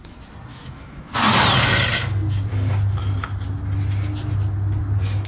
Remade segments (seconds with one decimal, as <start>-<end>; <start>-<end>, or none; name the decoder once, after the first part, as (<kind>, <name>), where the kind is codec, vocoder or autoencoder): 0.5-1.0 (autoencoder, DAC-VAE)